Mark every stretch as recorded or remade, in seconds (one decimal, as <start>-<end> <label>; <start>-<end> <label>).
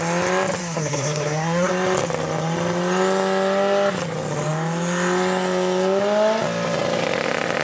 0.0-0.6 recorded; 0.6-1.7 remade; 1.7-7.6 recorded